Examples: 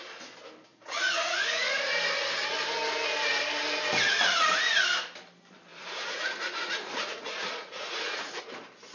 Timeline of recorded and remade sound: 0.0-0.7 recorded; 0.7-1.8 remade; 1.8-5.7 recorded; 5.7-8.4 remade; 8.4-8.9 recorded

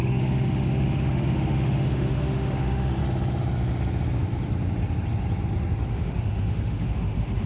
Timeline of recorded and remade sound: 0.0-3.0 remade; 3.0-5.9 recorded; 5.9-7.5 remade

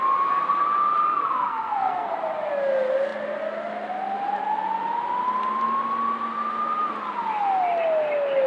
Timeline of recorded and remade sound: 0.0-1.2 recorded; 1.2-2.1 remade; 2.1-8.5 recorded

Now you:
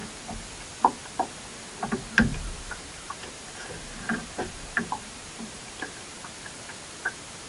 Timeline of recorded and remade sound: 0.0-2.3 recorded; 2.3-6.2 remade; 6.2-7.5 recorded

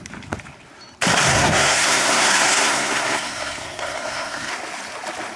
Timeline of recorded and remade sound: 0.0-1.3 recorded; 1.3-4.5 remade; 4.5-5.4 recorded

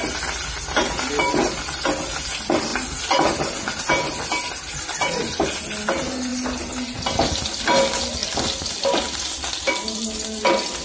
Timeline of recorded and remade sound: 0.0-10.8 recorded

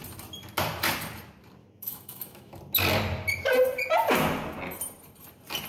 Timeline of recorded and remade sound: 0.0-1.6 recorded; 1.6-2.6 remade; 2.6-5.7 recorded